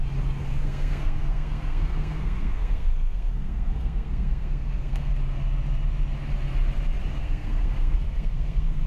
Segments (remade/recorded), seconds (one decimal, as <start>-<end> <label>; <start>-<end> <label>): 0.0-0.5 recorded; 0.5-5.1 remade; 5.1-7.2 recorded; 7.2-8.9 remade